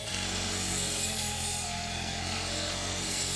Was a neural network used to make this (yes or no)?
yes